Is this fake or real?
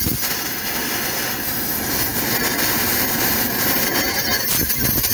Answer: real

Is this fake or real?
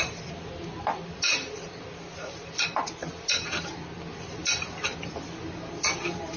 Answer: fake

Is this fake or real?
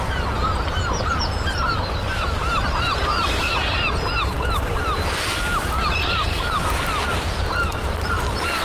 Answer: fake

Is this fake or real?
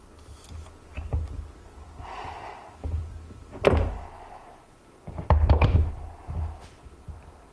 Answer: real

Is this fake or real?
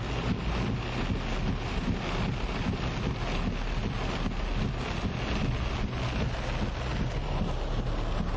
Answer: real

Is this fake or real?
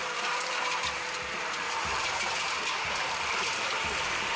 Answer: fake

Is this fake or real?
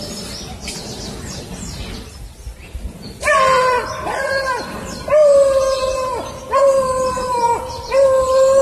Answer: real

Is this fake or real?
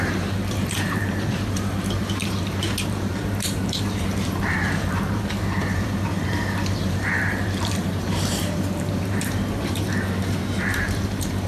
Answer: fake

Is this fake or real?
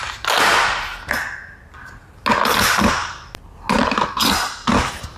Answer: real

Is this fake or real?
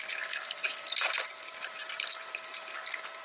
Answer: fake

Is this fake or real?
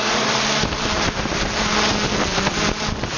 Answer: real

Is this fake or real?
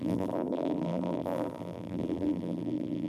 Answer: fake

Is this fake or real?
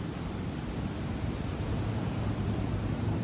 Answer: real